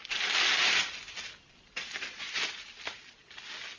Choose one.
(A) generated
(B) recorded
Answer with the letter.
B